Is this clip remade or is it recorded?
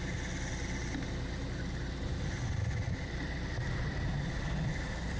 recorded